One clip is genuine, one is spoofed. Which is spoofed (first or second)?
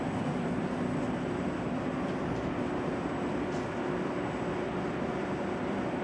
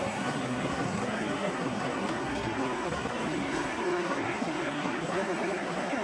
second